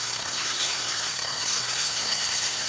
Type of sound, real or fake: fake